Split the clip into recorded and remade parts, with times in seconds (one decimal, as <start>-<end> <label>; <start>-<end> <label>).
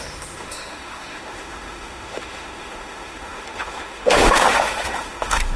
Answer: 0.0-5.6 remade